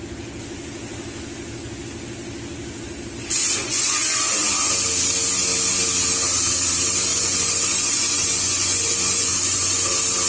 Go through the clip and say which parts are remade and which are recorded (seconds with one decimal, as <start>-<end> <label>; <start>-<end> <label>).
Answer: 0.0-3.6 recorded; 3.6-4.7 remade; 4.7-7.1 recorded; 7.1-9.9 remade; 9.9-10.3 recorded